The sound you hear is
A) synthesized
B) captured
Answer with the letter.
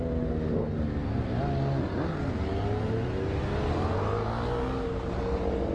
B